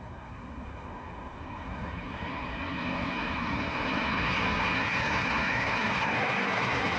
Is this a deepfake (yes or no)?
yes